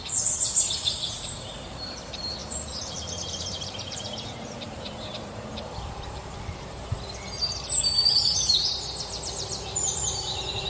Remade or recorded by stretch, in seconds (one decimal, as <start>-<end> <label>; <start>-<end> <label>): 0.0-10.7 remade

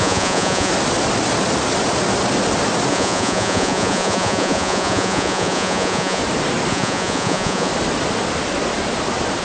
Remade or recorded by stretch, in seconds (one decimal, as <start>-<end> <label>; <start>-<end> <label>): 0.0-0.7 remade; 0.7-2.9 recorded; 2.9-6.2 remade; 6.2-6.7 recorded; 6.7-7.7 remade; 7.7-9.4 recorded

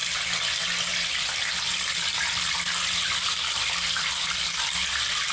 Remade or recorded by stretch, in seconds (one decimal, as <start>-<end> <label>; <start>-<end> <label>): 0.0-1.7 recorded; 1.7-5.3 remade

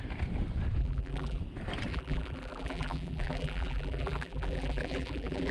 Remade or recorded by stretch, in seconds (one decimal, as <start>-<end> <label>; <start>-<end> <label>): 0.0-0.8 recorded; 0.8-1.4 remade; 1.4-1.9 recorded; 1.9-5.5 remade

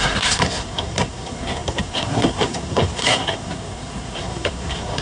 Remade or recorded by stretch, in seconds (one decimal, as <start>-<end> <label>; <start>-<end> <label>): 0.0-5.0 remade

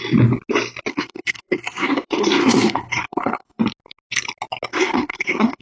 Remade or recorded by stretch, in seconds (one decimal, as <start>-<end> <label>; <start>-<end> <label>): 0.0-0.9 recorded; 0.9-3.6 remade; 3.6-4.7 recorded; 4.7-5.6 remade